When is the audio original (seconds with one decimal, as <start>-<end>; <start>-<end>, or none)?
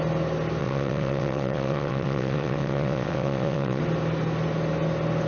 0.0-0.6; 3.8-5.3